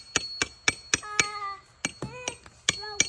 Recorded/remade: recorded